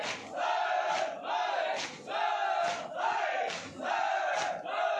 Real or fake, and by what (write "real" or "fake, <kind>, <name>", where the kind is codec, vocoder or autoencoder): fake, vocoder, BigVGAN v2